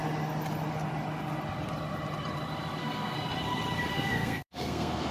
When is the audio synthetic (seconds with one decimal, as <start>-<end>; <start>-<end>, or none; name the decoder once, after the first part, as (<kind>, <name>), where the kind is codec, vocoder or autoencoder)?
2.8-3.3 (codec, SNAC); 3.9-5.1